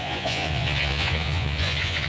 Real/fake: fake